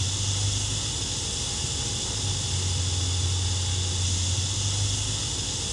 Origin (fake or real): real